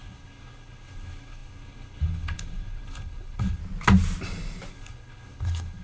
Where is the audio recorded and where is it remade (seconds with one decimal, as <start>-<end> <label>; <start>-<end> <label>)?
0.0-3.6 remade; 3.6-4.7 recorded; 4.7-5.8 remade